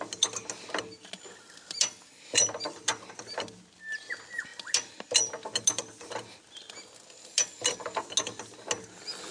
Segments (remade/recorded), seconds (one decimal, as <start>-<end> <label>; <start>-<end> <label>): 0.0-9.3 recorded